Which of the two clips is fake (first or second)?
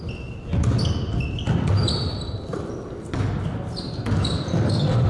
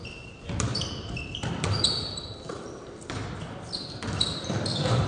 second